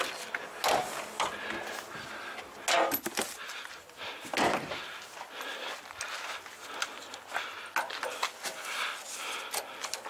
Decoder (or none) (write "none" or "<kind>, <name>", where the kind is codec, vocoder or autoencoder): none